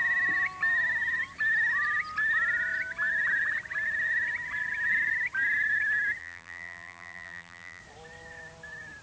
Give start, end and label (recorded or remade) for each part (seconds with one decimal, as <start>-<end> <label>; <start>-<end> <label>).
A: 0.0-6.2 recorded; 6.2-7.8 remade; 7.8-9.0 recorded